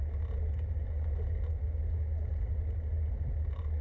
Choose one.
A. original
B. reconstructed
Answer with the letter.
A